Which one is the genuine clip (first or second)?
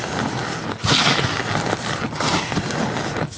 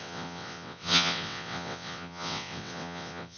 first